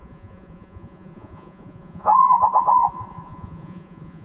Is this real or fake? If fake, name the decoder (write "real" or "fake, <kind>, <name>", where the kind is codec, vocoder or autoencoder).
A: fake, vocoder, Vocos